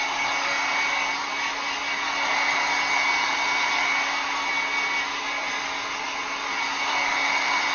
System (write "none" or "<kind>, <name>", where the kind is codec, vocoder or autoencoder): none